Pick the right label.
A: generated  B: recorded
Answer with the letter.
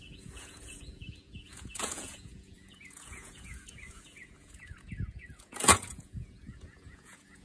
A